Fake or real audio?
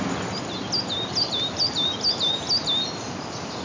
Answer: real